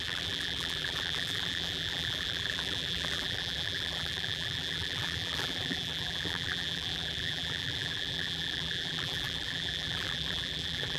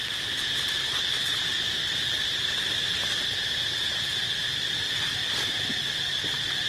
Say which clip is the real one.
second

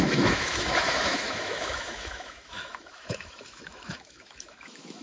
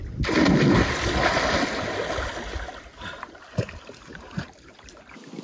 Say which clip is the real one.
second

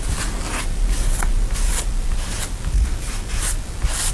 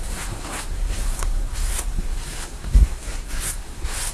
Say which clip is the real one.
first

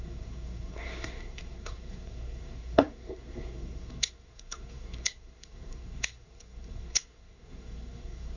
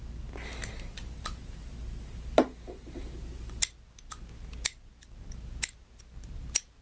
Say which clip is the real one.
second